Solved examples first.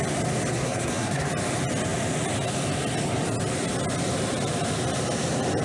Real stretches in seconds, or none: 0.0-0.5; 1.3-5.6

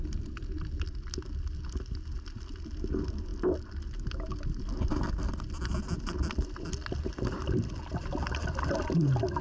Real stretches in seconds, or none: 0.0-9.4